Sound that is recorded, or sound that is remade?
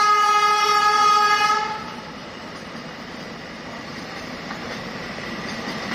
remade